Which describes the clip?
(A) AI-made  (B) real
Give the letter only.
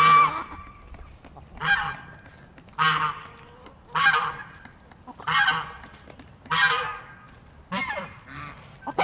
B